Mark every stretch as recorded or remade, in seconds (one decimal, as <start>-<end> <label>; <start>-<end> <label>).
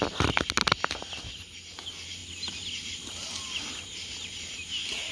0.0-5.1 recorded